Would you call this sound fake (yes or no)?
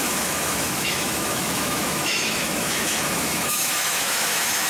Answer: yes